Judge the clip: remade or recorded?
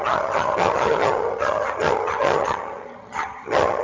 remade